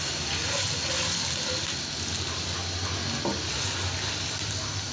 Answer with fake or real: real